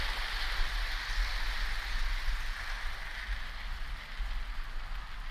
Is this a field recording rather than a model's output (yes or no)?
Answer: yes